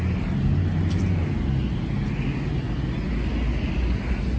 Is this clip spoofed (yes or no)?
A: no